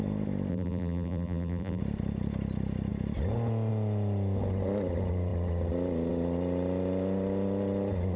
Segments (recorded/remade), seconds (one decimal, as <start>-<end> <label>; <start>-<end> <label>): 0.0-0.5 recorded; 0.5-1.8 remade; 1.8-8.2 recorded